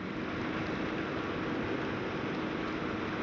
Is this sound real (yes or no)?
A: yes